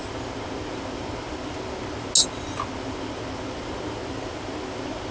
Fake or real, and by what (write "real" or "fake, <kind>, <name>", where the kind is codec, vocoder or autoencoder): real